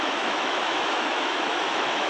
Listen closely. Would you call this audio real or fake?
fake